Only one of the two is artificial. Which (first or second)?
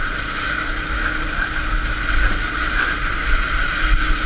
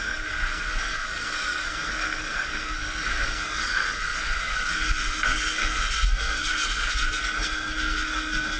second